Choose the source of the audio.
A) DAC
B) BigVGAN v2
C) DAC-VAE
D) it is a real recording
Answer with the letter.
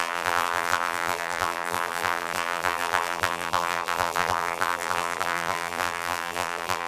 B